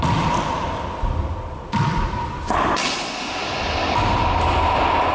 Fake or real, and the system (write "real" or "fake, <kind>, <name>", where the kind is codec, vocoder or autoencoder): real